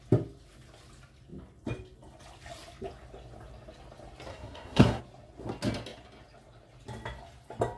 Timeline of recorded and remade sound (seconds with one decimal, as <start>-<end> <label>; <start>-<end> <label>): 0.0-4.3 recorded; 4.3-5.0 remade; 5.0-7.8 recorded